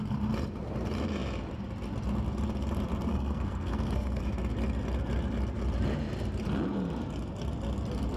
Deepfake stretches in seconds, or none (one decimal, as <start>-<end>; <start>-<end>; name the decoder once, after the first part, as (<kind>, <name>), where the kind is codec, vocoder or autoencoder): 3.1-4.2 (codec, SNAC)